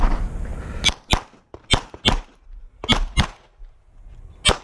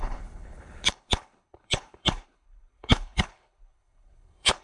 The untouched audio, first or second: first